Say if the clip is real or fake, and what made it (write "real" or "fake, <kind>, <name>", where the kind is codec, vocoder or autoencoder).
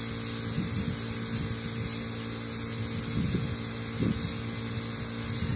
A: real